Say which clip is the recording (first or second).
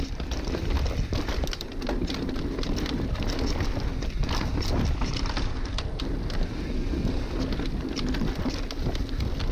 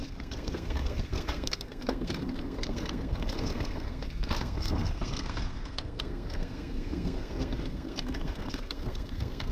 first